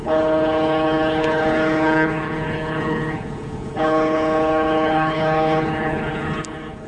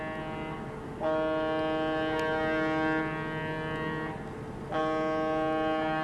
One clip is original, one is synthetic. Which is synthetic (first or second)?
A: first